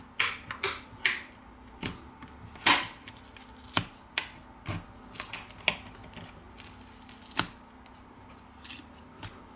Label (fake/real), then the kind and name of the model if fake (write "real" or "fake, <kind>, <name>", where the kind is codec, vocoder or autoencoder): real